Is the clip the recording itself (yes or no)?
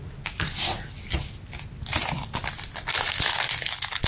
yes